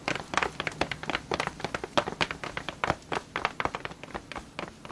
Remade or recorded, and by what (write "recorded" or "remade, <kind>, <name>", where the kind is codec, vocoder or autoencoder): recorded